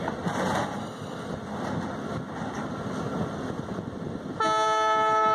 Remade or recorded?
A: recorded